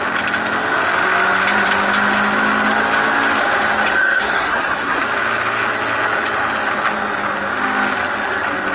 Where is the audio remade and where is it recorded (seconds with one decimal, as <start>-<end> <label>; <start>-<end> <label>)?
0.0-4.0 recorded; 4.0-5.0 remade; 5.0-8.7 recorded